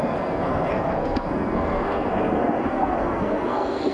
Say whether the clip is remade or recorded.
remade